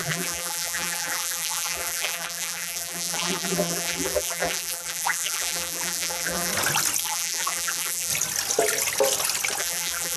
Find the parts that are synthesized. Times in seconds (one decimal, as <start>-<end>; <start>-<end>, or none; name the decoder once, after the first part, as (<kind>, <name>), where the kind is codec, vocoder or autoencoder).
0.0-6.5 (vocoder, BigVGAN v2); 7.0-8.1; 9.6-10.2